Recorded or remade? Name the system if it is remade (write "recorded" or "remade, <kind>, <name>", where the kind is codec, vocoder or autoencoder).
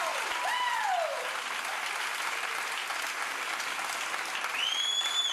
recorded